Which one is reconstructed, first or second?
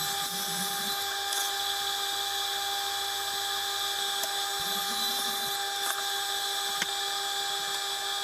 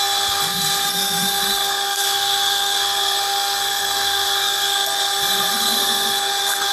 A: second